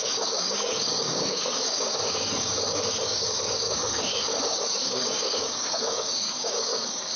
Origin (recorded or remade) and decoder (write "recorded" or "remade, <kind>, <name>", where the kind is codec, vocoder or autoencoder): remade, codec, DAC